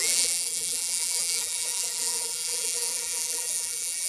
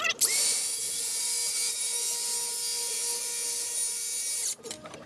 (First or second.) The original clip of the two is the second